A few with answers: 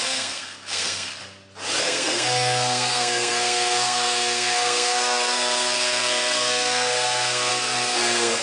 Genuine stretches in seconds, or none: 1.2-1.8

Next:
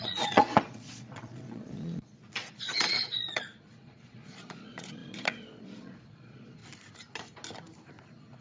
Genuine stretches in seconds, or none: 6.6-8.0

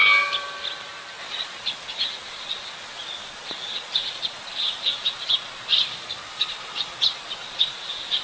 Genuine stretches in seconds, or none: 0.0-1.2; 5.7-6.3

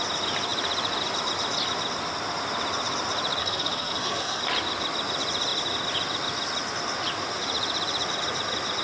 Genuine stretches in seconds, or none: 0.0-3.4; 4.4-8.8

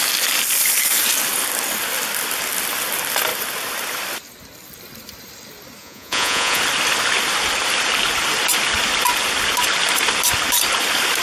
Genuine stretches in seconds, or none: 0.0-5.8; 6.6-11.2

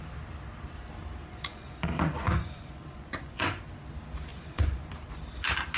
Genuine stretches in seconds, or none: 0.0-1.2; 3.6-4.3; 4.9-5.8

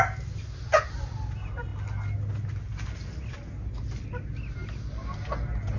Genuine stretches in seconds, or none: 0.0-5.8